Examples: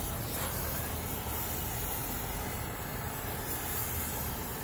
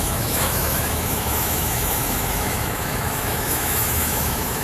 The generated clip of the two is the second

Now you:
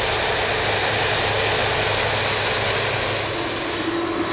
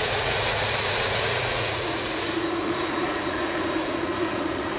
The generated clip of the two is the second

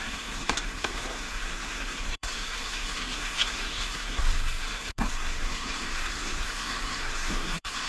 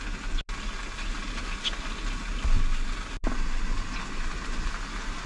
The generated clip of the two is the first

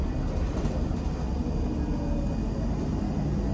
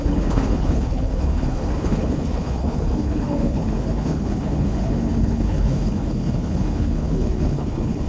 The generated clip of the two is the second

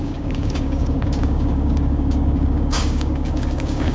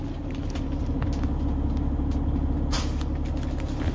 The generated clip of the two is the first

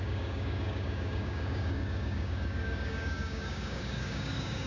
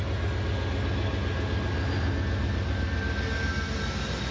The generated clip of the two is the first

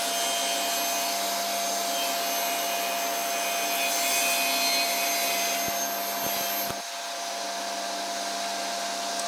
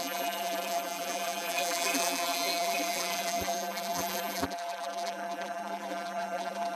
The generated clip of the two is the second